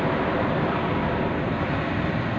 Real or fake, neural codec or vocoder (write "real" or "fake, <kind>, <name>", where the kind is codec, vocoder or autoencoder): real